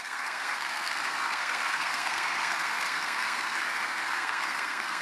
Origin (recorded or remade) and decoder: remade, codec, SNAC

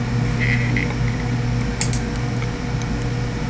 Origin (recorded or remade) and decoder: recorded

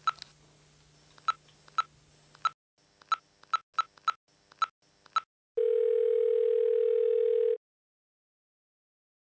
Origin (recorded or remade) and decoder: recorded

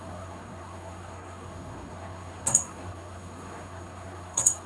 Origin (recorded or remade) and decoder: remade, codec, SNAC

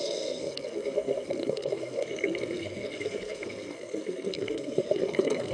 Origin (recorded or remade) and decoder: remade, codec, SNAC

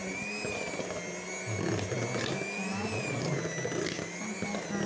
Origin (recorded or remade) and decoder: recorded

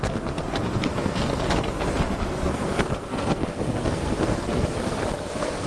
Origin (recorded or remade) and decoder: remade, codec, SNAC